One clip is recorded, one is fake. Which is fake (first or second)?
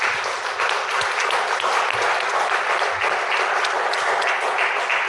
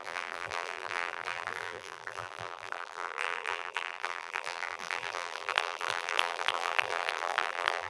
second